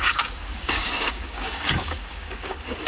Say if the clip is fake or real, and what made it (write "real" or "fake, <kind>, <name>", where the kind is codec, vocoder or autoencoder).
fake, codec, DAC